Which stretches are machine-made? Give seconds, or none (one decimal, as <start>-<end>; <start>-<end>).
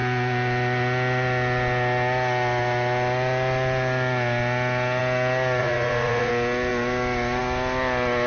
5.6-6.3